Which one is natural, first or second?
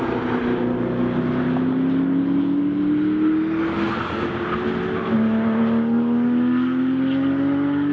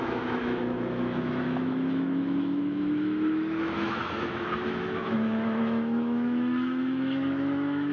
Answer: first